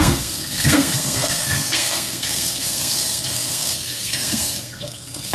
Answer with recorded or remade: remade